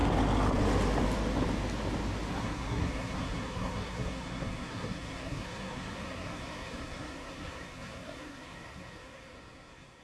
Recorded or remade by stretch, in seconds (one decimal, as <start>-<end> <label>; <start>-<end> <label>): 0.0-2.3 recorded; 2.3-10.0 remade